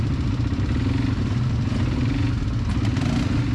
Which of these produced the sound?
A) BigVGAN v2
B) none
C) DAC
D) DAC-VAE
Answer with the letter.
B